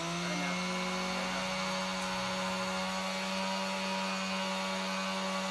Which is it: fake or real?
real